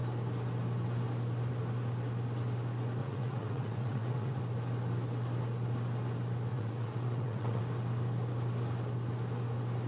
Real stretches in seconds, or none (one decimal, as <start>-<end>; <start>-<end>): 0.0-3.0; 4.4-6.5; 7.6-9.9